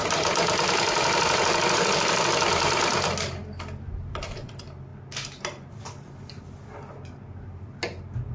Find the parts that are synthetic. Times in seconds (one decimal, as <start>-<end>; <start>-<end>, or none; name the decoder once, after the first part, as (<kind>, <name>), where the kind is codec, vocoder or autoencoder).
none